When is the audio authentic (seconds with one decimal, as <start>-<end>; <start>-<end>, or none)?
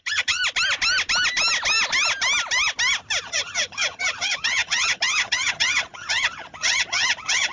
0.4-3.2